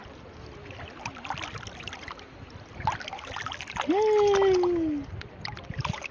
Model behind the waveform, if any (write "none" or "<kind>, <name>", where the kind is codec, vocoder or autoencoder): none